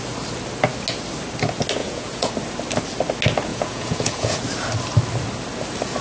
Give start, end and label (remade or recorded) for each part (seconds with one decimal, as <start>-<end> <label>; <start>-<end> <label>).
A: 0.0-1.8 recorded; 1.8-2.3 remade; 2.3-3.5 recorded; 3.5-4.4 remade; 4.4-6.0 recorded